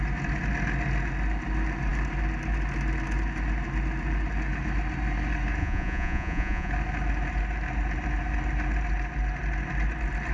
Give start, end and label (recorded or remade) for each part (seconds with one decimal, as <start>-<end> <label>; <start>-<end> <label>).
0.0-5.6 recorded; 5.6-6.7 remade; 6.7-10.3 recorded